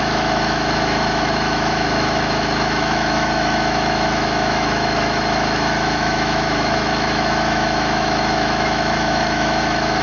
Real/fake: fake